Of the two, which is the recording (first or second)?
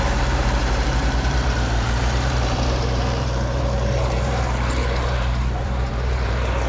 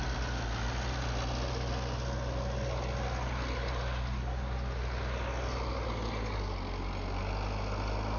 second